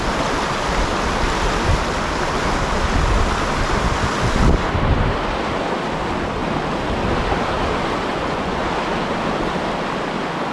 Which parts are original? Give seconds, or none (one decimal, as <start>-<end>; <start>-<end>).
0.0-8.1; 8.6-10.5

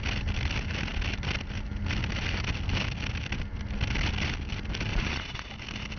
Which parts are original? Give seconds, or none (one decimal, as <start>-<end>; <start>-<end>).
0.0-4.9; 5.5-6.0

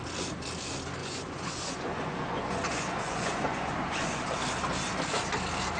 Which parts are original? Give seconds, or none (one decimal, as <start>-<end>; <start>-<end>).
0.0-1.0; 4.2-5.8

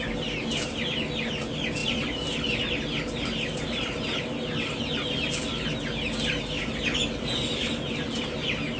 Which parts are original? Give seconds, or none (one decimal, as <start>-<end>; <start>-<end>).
0.0-8.8

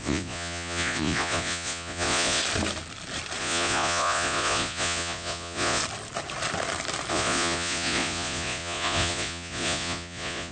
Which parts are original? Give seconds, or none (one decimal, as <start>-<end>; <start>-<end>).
2.4-3.4; 5.8-7.1

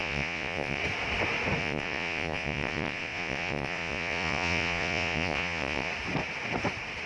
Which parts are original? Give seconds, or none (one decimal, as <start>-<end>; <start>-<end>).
0.8-1.6; 5.9-7.1